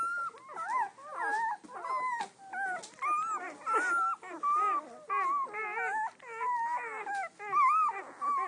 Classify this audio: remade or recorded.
recorded